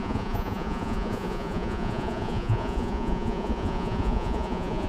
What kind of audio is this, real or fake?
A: fake